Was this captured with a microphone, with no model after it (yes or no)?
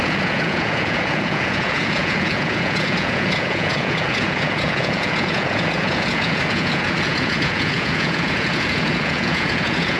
no